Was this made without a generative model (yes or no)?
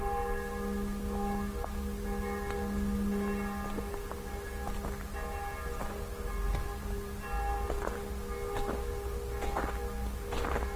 yes